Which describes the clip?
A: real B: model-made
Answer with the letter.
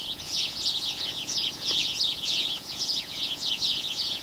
B